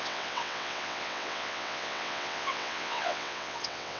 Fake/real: fake